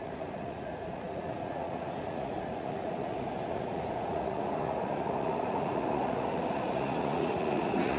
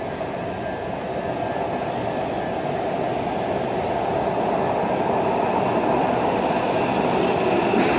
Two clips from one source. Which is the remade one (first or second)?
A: first